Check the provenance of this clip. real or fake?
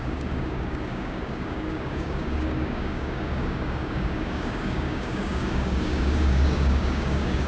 fake